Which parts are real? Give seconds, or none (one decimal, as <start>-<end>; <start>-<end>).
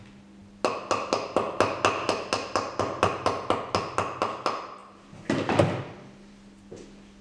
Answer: 0.0-7.2